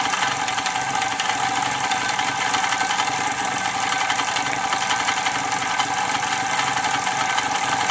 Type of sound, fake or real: real